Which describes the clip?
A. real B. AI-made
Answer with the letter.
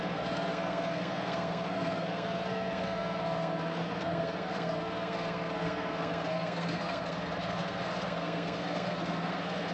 B